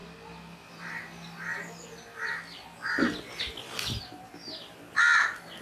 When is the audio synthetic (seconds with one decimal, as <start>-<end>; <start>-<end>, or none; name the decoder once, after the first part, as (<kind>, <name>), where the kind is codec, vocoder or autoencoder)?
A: none

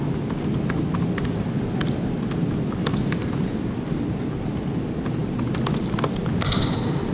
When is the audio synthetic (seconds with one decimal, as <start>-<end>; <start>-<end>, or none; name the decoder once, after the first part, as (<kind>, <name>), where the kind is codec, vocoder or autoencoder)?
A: none

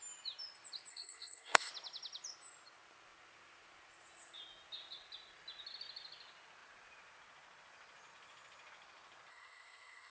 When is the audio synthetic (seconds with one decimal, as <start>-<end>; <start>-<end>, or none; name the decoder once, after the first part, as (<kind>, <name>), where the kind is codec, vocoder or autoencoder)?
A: 0.9-1.7 (codec, SNAC); 9.3-10.1